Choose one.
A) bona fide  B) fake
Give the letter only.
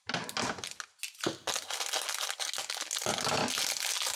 A